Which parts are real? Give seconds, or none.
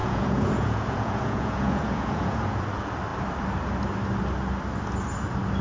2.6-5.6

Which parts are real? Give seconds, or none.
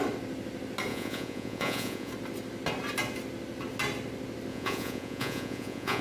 0.0-0.9; 2.1-4.5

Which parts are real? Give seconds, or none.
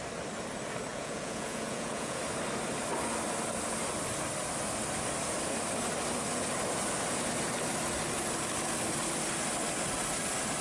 0.0-0.9; 2.2-10.6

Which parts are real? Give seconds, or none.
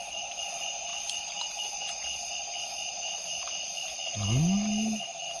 0.9-1.5; 2.2-5.4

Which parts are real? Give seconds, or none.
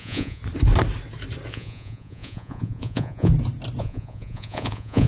0.4-1.5; 3.3-3.8